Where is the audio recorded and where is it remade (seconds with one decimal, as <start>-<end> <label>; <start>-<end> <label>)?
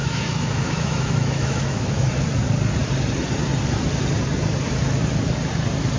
0.0-2.1 remade; 2.1-6.0 recorded